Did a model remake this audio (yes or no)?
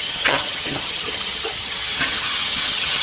yes